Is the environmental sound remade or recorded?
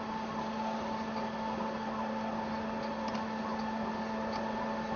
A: recorded